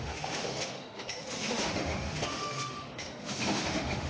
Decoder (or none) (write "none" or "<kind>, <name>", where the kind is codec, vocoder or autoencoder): autoencoder, DAC-VAE